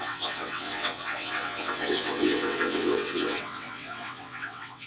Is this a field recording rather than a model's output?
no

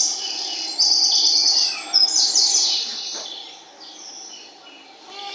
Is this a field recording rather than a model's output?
yes